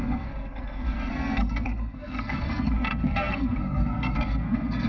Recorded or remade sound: remade